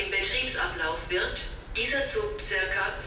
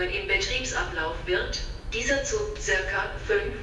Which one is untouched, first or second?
first